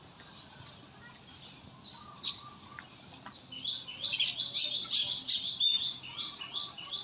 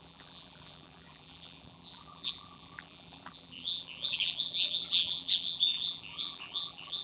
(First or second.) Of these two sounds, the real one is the first